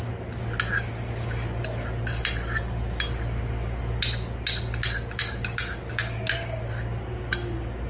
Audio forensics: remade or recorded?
recorded